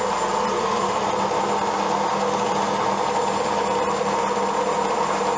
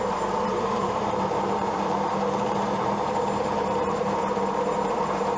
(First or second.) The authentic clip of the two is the first